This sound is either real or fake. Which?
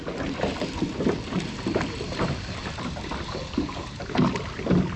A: real